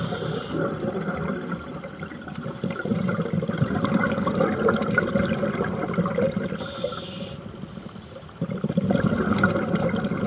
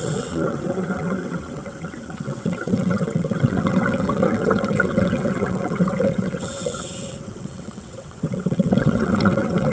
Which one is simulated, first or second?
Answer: second